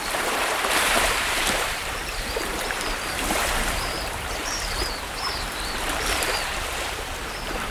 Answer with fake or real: fake